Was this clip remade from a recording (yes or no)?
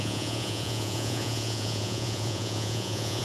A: yes